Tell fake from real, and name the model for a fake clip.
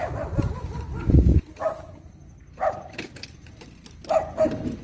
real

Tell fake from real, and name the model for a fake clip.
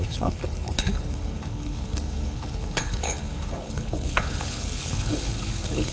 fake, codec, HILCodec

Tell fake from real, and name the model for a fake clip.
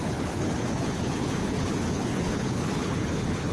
fake, codec, HILCodec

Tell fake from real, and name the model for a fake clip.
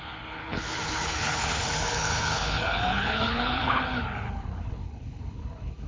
fake, codec, HILCodec